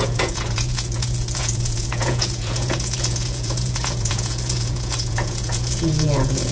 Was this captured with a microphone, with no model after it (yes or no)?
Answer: no